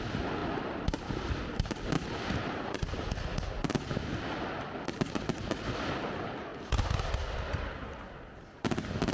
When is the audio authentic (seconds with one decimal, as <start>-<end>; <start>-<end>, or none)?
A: 0.0-9.1